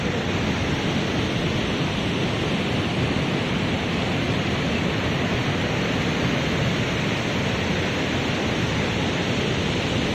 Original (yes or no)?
yes